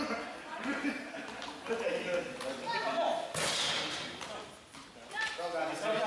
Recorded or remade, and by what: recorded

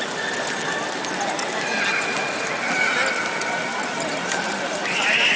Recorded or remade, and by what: recorded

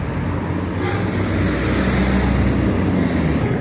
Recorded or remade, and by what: recorded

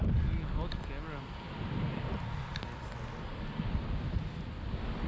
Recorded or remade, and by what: recorded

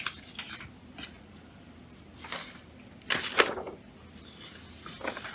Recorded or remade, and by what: recorded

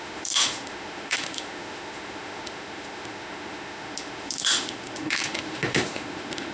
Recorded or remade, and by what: remade, autoencoder, DAC-VAE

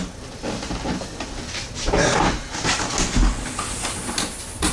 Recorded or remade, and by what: recorded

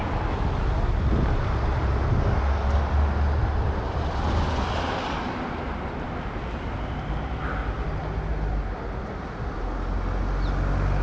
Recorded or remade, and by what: recorded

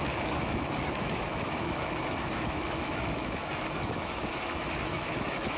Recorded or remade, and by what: remade, autoencoder, DAC-VAE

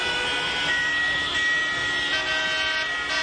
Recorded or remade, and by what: recorded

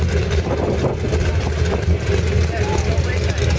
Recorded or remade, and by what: recorded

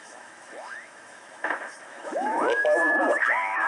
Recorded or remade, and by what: remade, autoencoder, DAC-VAE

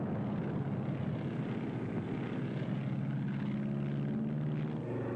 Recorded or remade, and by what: recorded